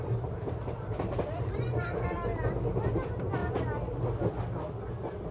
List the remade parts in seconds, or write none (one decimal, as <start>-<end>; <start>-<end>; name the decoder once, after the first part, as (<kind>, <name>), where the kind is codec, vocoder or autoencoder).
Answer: 0.0-3.4 (vocoder, BigVGAN v2); 4.7-5.3